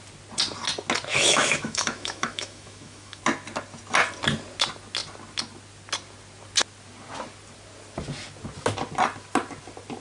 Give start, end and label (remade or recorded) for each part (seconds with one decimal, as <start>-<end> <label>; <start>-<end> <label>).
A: 0.0-1.1 recorded; 1.1-3.2 remade; 3.2-10.0 recorded